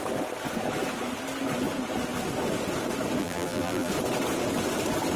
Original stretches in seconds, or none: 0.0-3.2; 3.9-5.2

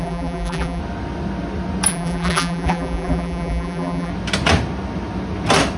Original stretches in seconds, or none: 0.8-1.9; 4.1-5.8

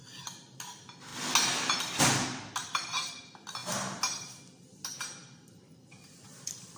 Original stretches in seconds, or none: 0.0-2.6; 3.2-5.2

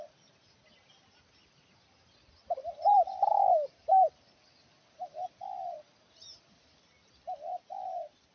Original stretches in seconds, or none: 0.0-2.6; 4.1-7.5